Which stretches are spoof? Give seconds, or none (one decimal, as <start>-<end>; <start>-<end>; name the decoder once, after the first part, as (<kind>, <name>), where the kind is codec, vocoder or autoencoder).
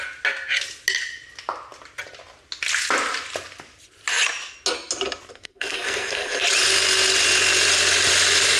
5.3-6.4 (codec, SNAC)